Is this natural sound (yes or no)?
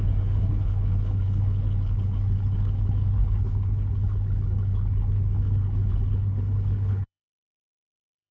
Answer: no